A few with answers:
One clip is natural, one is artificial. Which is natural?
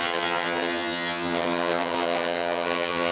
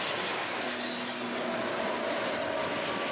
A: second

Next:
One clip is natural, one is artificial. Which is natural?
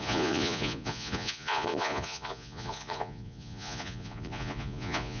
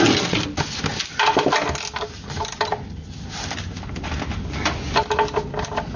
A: second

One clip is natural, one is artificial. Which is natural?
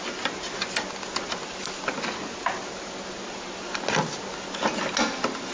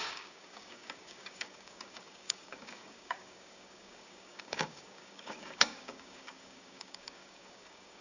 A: first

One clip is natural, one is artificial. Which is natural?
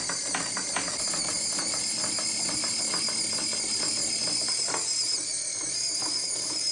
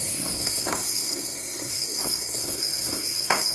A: first